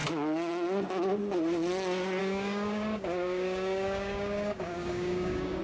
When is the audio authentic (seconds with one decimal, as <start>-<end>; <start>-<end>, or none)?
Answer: 0.0-2.2